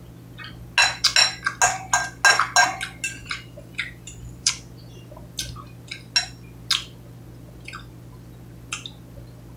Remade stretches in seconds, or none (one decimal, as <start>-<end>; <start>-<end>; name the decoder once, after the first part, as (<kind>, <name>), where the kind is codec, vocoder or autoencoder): 3.2-4.5 (vocoder, BigVGAN v2)